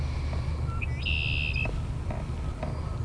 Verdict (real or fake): real